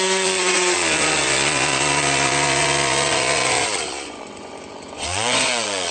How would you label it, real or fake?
fake